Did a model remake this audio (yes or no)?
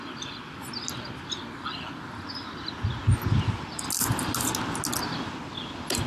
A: no